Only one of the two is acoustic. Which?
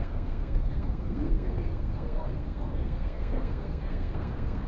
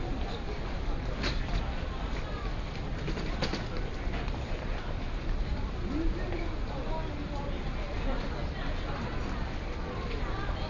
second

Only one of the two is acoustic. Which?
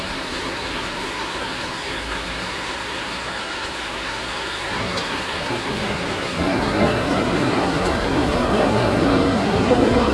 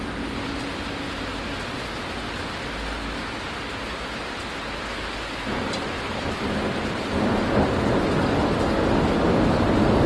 second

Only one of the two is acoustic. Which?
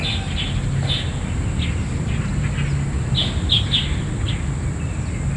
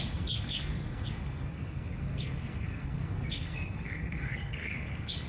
first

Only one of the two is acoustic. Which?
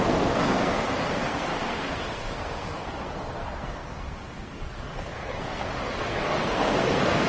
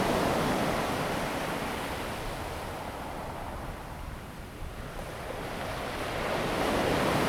second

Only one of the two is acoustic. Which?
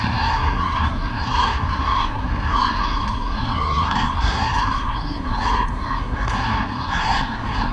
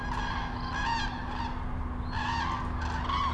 second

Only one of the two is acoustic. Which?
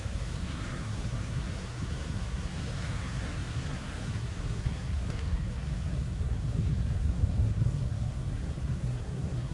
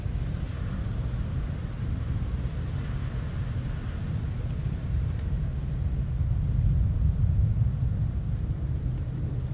second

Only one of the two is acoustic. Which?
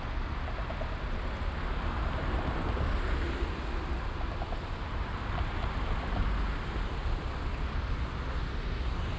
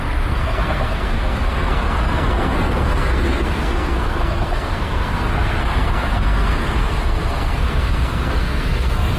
first